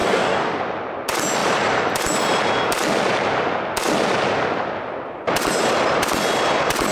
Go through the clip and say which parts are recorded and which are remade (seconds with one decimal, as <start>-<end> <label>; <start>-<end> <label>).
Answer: 0.0-0.6 remade; 0.6-6.9 recorded